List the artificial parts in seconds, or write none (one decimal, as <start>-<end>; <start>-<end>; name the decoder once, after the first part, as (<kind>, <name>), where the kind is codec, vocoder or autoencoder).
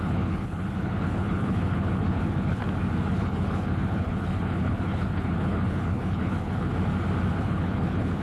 0.0-2.6 (codec, HILCodec); 3.1-6.7; 7.3-8.2